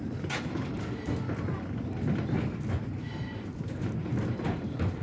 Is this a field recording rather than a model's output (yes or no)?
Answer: yes